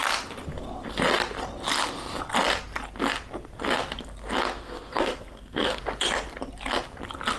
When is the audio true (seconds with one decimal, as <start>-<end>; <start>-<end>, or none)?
0.0-4.6; 5.8-7.4